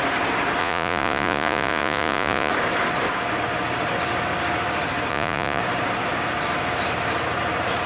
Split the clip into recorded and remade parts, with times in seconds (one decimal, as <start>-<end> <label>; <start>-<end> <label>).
0.0-0.6 recorded; 0.6-2.5 remade; 2.5-5.1 recorded; 5.1-5.6 remade; 5.6-7.9 recorded